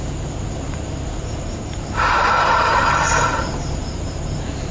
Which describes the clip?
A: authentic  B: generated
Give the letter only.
B